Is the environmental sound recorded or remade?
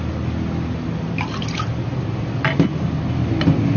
recorded